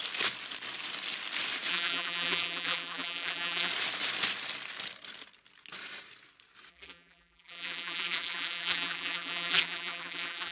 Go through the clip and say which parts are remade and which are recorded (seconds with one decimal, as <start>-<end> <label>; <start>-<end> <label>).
0.0-1.7 recorded; 1.7-3.7 remade; 3.7-6.7 recorded; 6.7-10.5 remade